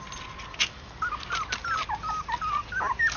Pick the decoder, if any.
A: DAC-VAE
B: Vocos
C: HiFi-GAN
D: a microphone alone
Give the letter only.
D